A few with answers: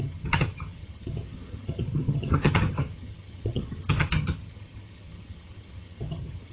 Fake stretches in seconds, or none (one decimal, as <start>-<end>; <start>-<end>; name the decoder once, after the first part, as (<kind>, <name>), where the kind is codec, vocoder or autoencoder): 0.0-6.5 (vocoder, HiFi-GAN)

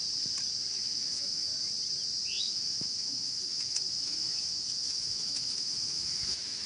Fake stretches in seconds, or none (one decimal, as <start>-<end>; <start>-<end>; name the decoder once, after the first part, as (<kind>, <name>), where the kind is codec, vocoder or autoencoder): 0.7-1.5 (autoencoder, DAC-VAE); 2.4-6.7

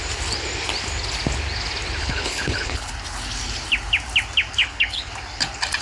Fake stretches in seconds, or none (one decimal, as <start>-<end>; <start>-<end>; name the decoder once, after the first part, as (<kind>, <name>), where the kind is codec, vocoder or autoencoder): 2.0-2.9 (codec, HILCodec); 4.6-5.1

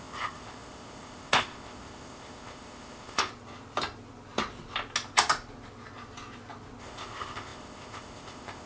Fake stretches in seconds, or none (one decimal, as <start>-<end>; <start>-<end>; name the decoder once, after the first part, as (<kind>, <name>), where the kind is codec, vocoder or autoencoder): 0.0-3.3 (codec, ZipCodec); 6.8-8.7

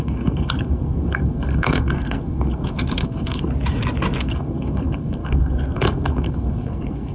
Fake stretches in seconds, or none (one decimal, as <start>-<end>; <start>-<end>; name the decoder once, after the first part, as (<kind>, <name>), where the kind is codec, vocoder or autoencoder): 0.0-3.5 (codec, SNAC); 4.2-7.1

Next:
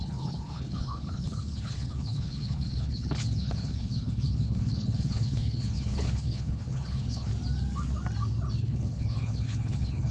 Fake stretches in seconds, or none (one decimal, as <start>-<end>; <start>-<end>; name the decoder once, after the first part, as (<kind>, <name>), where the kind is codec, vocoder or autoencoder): 0.0-7.3 (codec, HILCodec); 8.6-10.1

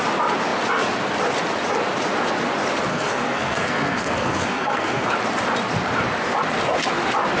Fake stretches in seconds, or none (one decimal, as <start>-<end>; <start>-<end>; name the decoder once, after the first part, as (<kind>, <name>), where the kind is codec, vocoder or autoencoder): 2.9-5.1 (codec, SNAC)

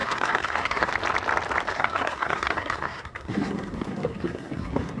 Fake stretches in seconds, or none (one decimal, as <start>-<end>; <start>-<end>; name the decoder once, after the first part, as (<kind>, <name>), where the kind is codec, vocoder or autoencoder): 0.0-0.9 (codec, SNAC); 1.7-5.0